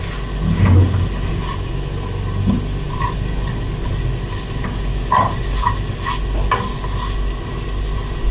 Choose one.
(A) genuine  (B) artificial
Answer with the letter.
A